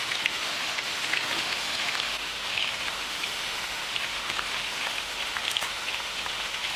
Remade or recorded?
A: remade